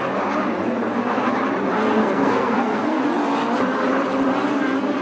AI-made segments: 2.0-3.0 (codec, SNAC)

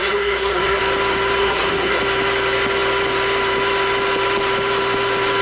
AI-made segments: 0.0-0.8 (codec, SNAC); 1.4-2.0

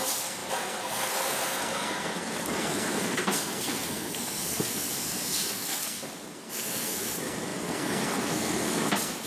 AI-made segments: 0.0-9.3 (codec, SNAC)

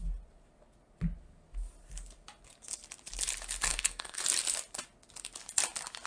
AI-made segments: 3.7-4.2 (codec, SNAC)

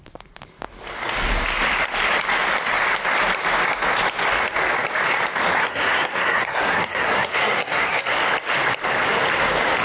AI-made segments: 5.6-8.0 (codec, SNAC)